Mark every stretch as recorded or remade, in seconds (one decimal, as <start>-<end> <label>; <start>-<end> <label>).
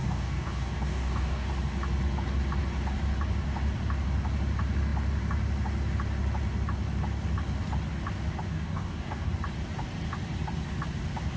0.0-1.5 remade; 1.5-8.5 recorded; 8.5-9.3 remade; 9.3-11.4 recorded